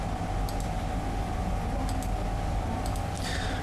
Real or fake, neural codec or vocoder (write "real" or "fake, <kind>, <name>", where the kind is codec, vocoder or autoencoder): real